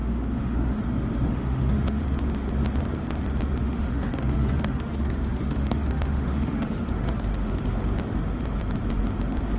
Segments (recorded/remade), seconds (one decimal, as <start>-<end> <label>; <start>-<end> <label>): 0.0-0.8 remade; 0.8-1.3 recorded; 1.3-2.0 remade; 2.0-3.6 recorded; 3.6-7.8 remade; 7.8-9.6 recorded